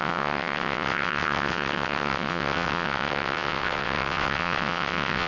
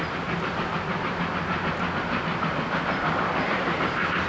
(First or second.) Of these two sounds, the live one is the second